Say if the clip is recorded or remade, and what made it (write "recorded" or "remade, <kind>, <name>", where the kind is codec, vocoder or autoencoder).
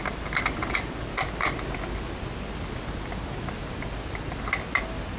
recorded